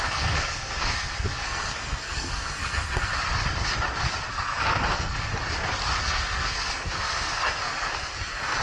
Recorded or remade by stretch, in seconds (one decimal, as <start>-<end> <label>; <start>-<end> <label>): 0.0-3.1 remade; 3.1-4.3 recorded; 4.3-5.3 remade; 5.3-6.0 recorded; 6.0-8.6 remade